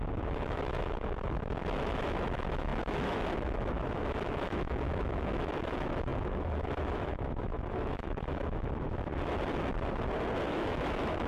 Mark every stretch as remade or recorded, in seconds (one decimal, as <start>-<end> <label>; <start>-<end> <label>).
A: 0.0-9.1 remade; 9.1-10.5 recorded; 10.5-11.3 remade